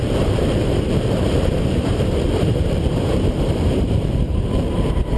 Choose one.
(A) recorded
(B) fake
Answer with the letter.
B